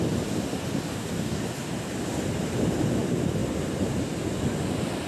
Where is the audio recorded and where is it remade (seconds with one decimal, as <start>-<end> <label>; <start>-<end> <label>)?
0.0-0.9 recorded; 0.9-1.4 remade; 1.4-5.1 recorded